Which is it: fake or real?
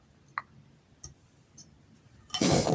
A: real